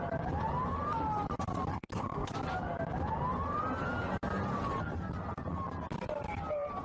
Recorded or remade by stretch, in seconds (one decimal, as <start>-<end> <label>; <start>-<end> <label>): 0.0-1.7 recorded; 1.7-2.3 remade; 2.3-6.8 recorded